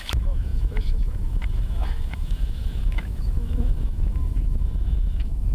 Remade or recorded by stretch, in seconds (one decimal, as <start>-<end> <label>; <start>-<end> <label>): 0.0-5.5 remade